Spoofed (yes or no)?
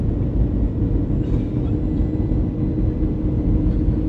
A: no